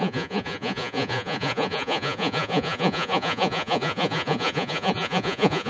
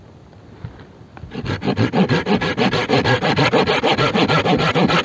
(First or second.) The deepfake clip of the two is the first